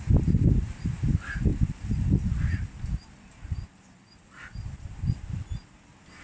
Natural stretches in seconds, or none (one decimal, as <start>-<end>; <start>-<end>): 0.0-6.2